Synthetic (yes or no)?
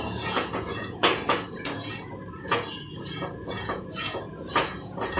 yes